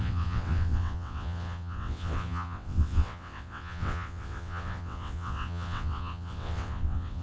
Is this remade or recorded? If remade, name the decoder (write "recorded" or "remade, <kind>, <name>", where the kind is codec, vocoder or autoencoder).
remade, vocoder, WaveNeXt